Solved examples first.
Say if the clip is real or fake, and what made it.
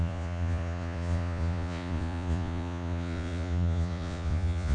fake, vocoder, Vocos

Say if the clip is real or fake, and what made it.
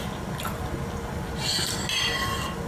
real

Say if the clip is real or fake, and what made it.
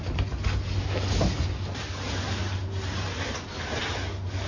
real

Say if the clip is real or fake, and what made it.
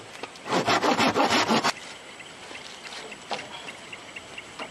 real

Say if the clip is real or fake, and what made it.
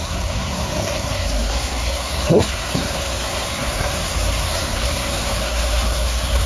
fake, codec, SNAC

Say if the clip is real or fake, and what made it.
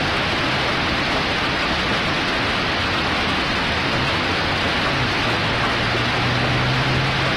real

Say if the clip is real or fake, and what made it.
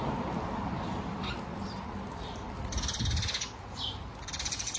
real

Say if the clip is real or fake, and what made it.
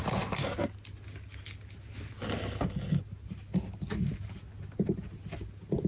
real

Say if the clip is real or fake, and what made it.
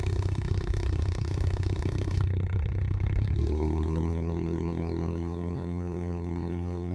fake, codec, SNAC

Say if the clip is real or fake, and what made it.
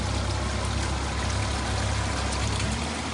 real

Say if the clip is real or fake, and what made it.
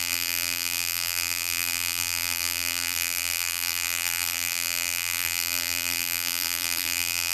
fake, vocoder, BigVGAN v2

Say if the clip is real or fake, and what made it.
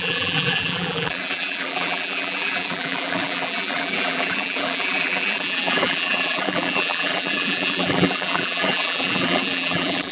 fake, vocoder, BigVGAN v2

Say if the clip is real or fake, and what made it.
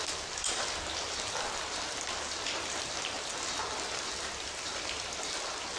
real